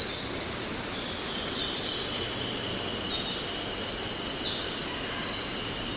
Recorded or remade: recorded